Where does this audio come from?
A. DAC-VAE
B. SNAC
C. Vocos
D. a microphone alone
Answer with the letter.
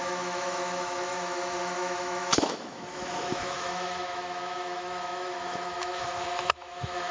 A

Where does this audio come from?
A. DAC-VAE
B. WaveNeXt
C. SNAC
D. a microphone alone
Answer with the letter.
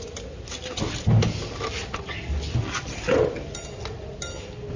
D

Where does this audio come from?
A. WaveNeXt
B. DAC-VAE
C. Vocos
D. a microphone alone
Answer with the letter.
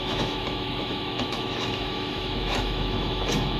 B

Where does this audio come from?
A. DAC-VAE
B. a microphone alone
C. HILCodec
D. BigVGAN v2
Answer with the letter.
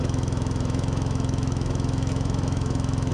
A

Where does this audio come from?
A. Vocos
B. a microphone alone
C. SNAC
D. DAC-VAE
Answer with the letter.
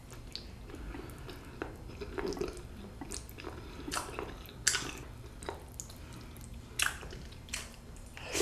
B